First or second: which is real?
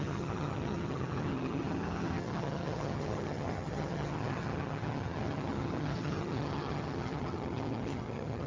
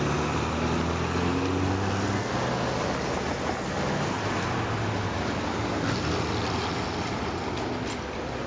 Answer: second